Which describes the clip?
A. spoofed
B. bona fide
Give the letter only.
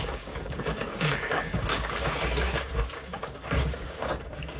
A